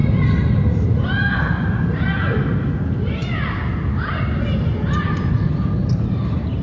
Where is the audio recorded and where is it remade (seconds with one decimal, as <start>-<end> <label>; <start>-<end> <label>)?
0.0-6.6 recorded